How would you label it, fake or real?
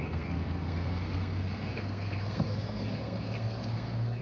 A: fake